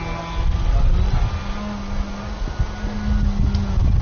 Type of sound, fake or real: real